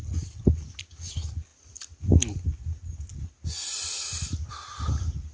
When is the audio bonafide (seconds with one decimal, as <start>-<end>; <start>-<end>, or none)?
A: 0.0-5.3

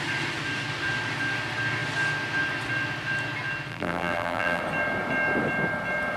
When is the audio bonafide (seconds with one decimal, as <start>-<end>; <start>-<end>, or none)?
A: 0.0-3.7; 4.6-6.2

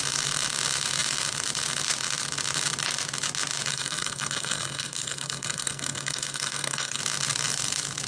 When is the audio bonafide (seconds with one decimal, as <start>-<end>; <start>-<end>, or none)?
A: 0.0-3.7; 7.0-8.1

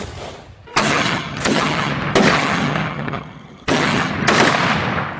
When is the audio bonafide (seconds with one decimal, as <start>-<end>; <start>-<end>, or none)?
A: 0.0-0.8; 1.9-2.3; 4.1-5.2